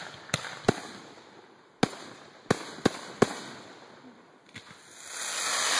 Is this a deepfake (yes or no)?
no